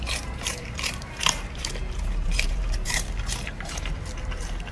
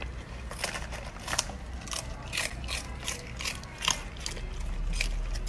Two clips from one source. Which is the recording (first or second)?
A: second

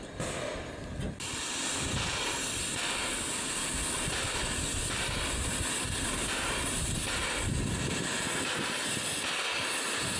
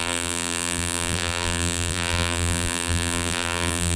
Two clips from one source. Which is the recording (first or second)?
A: first